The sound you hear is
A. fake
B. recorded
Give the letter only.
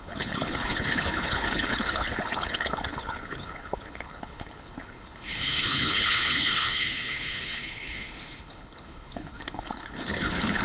A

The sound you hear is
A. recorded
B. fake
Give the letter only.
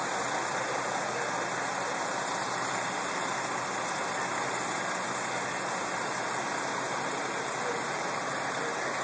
A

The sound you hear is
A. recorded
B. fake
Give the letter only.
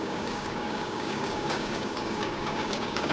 B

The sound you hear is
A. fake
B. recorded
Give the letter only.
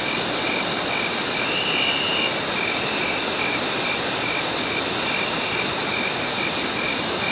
B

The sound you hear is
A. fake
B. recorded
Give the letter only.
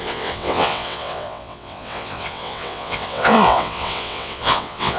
A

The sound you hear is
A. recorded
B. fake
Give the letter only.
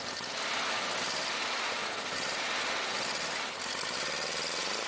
A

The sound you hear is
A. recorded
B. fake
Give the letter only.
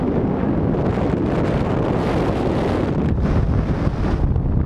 A